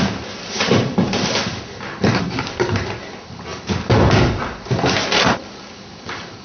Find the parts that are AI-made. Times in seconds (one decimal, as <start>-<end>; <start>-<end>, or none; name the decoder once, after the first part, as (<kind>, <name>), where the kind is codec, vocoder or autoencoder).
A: none